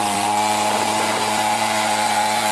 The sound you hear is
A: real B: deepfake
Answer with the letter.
B